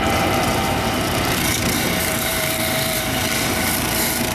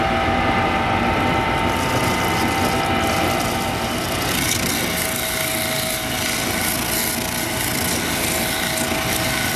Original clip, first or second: second